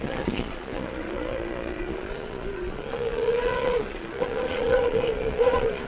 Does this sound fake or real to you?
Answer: fake